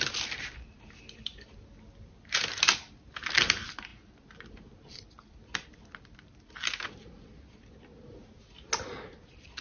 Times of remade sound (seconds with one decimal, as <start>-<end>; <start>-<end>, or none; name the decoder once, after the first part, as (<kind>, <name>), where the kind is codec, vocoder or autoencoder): none